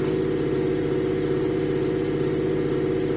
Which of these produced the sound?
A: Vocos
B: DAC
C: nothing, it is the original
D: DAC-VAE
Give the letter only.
C